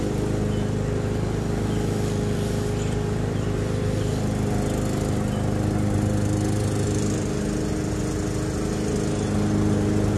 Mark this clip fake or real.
real